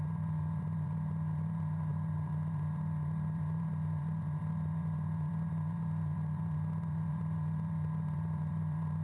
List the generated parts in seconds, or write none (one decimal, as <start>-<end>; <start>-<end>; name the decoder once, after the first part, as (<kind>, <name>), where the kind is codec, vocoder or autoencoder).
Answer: 0.0-9.0 (vocoder, BigVGAN v2)